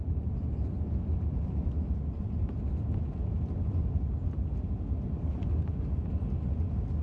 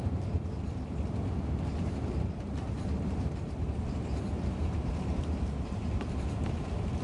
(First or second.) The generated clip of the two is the second